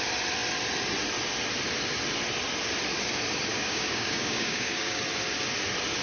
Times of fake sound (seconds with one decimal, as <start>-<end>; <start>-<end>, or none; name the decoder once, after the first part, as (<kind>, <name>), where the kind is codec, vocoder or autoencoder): 3.5-5.0 (codec, DAC)